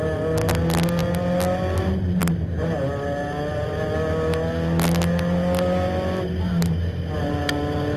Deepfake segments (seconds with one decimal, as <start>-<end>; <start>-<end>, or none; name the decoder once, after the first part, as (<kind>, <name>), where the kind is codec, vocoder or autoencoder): none